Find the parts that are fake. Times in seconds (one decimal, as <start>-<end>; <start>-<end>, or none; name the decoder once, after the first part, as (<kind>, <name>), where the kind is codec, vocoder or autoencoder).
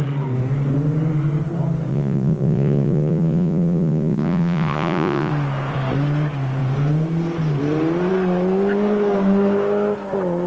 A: 1.9-5.3 (vocoder, Vocos)